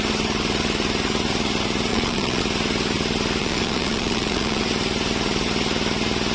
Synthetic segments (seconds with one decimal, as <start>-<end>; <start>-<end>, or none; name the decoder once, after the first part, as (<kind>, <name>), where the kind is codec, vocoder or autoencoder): 1.9-2.4 (vocoder, Vocos); 3.4-4.6